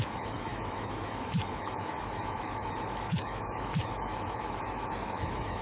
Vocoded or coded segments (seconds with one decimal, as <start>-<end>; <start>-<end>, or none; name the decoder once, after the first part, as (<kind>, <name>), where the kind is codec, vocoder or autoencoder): 0.0-5.6 (autoencoder, DAC-VAE)